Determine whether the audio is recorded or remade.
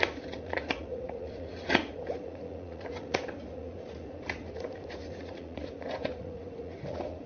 remade